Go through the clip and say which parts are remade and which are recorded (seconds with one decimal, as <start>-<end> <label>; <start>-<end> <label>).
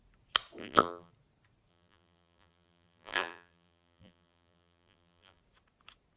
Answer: 0.0-0.6 recorded; 0.6-1.1 remade; 1.1-1.7 recorded; 1.7-5.4 remade; 5.4-6.2 recorded